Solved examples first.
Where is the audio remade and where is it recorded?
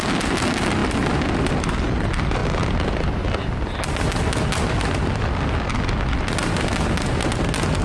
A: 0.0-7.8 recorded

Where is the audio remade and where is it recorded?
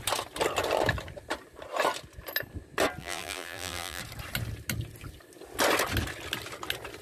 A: 0.0-3.0 recorded; 3.0-4.0 remade; 4.0-7.0 recorded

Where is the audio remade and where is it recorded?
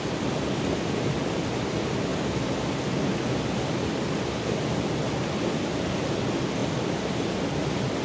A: 0.0-8.0 recorded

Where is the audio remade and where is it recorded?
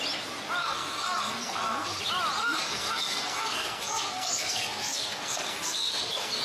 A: 0.0-0.6 recorded; 0.6-2.0 remade; 2.0-2.4 recorded; 2.4-6.4 remade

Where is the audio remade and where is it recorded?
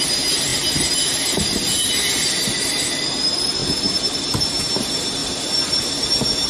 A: 0.0-3.6 remade; 3.6-4.4 recorded; 4.4-6.5 remade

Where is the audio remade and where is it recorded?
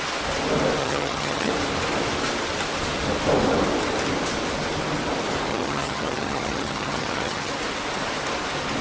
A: 0.0-0.8 recorded; 0.8-1.5 remade; 1.5-5.5 recorded; 5.5-7.5 remade; 7.5-8.8 recorded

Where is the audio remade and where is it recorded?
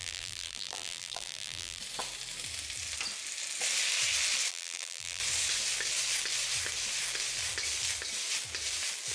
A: 0.0-1.8 remade; 1.8-4.5 recorded; 4.5-5.2 remade; 5.2-9.1 recorded